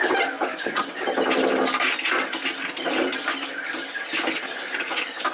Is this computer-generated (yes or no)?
no